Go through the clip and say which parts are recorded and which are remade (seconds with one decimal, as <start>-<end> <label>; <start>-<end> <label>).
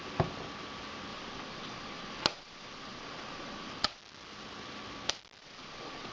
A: 0.0-1.1 recorded; 1.1-4.0 remade; 4.0-5.4 recorded; 5.4-6.1 remade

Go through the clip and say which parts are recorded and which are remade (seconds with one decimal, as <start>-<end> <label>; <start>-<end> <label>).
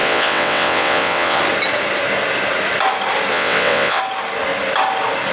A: 0.0-1.4 remade; 1.4-3.3 recorded; 3.3-4.0 remade; 4.0-5.3 recorded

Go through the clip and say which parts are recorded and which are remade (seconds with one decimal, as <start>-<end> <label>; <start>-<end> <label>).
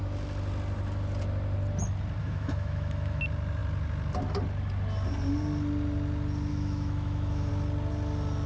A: 0.0-2.2 recorded; 2.2-3.2 remade; 3.2-6.5 recorded; 6.5-7.5 remade; 7.5-8.5 recorded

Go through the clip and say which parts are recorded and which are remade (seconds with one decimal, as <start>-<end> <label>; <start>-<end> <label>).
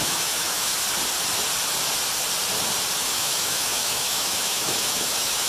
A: 0.0-0.7 remade; 0.7-3.0 recorded; 3.0-5.5 remade